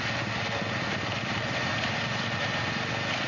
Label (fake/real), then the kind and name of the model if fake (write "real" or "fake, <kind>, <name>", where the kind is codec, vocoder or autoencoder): real